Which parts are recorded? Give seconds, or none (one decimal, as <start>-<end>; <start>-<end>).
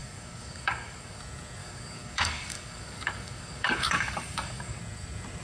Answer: 1.2-1.6; 4.8-5.4